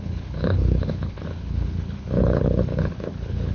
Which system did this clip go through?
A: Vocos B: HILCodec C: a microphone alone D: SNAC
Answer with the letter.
B